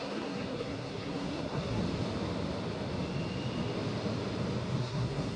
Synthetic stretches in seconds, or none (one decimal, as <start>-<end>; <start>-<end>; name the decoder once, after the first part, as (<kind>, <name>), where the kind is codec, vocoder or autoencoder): 0.0-1.8 (codec, SNAC); 4.8-5.4